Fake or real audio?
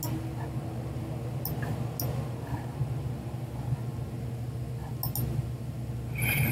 real